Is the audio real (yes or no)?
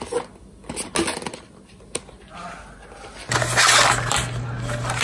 yes